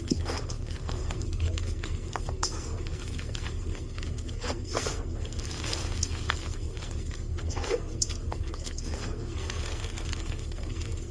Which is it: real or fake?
fake